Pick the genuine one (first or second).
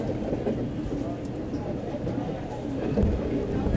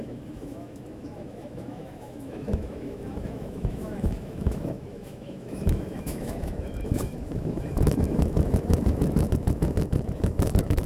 first